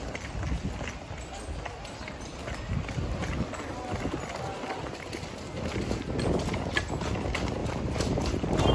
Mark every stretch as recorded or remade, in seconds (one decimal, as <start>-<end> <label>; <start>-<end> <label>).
0.0-7.6 recorded; 7.6-8.7 remade